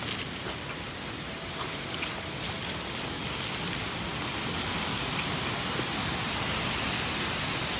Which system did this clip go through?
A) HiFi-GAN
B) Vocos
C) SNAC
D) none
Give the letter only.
D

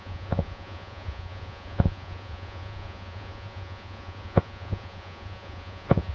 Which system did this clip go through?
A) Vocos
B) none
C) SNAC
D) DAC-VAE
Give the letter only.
A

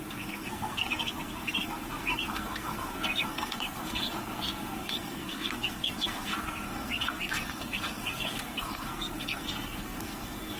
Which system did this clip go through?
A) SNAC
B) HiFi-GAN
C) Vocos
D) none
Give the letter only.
A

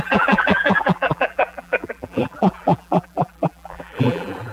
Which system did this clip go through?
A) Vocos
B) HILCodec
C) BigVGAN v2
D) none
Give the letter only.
C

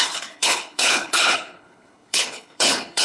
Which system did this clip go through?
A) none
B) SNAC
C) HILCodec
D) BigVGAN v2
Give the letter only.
C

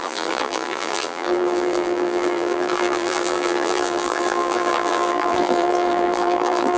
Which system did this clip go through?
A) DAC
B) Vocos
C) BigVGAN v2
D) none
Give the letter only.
C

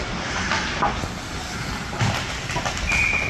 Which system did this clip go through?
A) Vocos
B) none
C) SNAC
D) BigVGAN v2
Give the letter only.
B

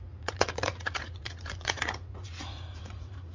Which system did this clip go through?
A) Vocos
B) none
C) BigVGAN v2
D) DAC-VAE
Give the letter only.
A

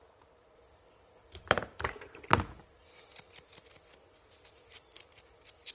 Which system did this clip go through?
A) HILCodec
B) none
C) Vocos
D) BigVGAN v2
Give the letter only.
D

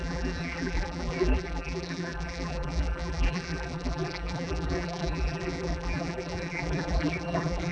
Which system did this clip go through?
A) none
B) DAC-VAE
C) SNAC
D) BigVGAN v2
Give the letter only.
D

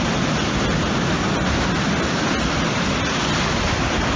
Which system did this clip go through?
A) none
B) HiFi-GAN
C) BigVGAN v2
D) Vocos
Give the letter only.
A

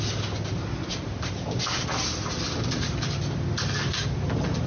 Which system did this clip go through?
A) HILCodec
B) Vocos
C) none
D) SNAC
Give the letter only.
C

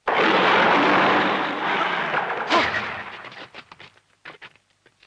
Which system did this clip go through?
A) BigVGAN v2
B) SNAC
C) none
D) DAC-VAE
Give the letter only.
C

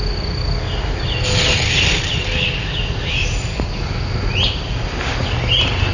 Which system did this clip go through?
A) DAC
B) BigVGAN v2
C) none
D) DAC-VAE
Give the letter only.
C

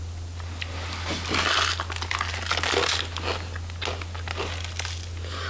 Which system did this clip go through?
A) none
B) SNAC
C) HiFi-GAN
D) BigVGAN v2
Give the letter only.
A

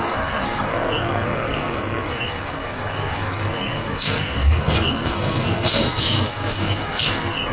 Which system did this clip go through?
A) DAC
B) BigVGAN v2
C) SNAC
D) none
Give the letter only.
C